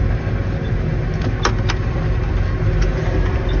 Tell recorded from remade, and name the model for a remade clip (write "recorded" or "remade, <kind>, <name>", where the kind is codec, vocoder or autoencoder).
recorded